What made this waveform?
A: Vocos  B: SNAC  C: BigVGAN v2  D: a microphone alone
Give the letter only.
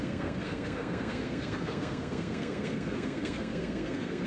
B